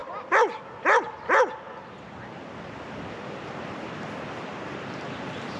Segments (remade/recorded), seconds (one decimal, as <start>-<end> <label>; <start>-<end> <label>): 0.0-5.6 recorded